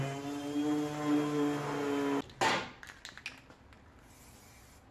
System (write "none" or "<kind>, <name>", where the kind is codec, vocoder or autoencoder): none